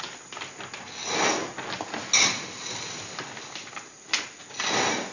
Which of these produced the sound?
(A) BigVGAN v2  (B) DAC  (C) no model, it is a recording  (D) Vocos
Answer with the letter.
C